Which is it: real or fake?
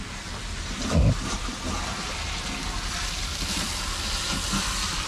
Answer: real